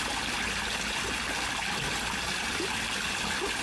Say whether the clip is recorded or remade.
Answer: recorded